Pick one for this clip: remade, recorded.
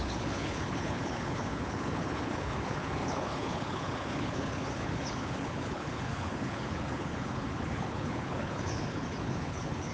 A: remade